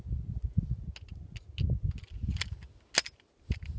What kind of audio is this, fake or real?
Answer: real